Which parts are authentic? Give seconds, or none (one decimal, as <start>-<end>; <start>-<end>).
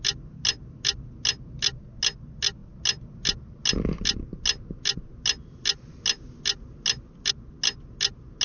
0.0-8.4